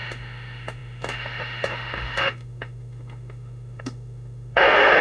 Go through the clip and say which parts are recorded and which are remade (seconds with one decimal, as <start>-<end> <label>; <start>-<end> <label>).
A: 0.0-5.0 remade